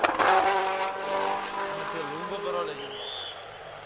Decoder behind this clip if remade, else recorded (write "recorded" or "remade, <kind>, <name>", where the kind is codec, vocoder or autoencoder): recorded